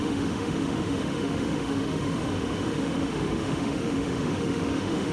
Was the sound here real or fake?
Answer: fake